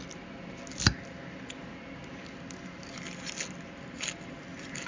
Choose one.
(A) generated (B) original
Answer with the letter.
B